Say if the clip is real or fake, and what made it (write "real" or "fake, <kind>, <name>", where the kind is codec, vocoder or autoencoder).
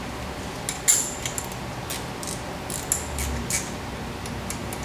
real